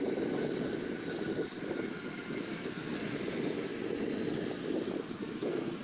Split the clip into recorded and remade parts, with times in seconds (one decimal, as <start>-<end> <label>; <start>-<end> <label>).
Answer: 0.0-2.5 recorded; 2.5-3.2 remade; 3.2-5.2 recorded; 5.2-5.8 remade